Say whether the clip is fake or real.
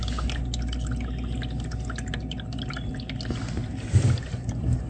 real